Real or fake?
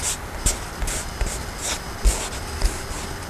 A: real